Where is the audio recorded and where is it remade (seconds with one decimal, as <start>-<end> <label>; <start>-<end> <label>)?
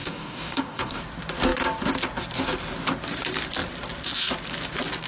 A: 0.0-1.0 remade; 1.0-5.1 recorded